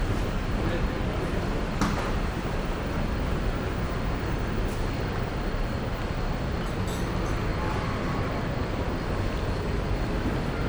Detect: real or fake real